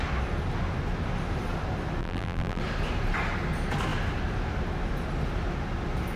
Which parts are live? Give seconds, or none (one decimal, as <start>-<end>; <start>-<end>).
0.0-2.0; 2.6-6.2